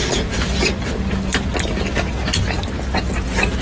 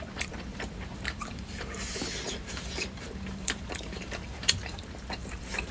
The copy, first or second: second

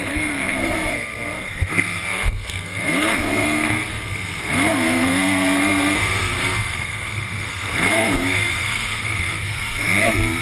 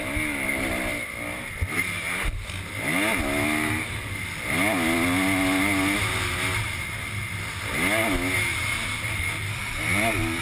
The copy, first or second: first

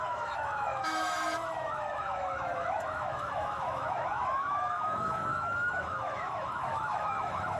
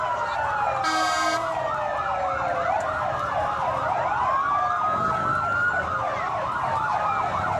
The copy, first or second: first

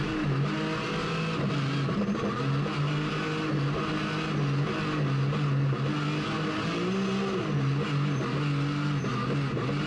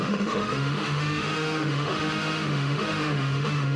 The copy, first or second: second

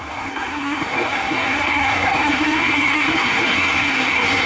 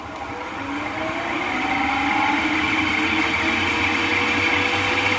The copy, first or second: first